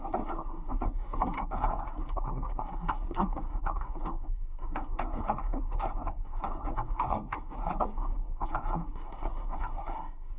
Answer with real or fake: fake